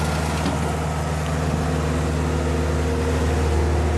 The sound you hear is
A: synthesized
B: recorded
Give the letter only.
B